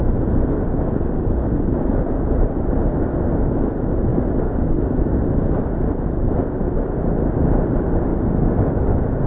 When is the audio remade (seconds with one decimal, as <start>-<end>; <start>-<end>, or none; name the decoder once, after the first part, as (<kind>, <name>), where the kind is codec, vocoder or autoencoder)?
none